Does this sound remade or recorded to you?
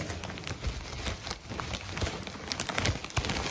recorded